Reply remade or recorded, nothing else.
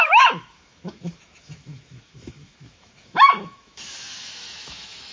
remade